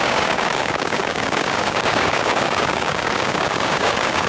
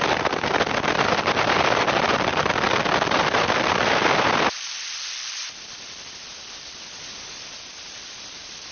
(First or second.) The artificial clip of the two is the first